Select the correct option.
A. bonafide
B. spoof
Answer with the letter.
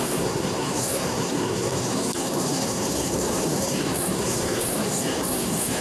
B